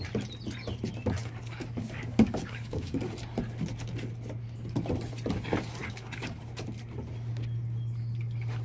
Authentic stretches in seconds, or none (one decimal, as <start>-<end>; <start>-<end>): 0.0-1.2; 3.1-5.8; 6.4-8.6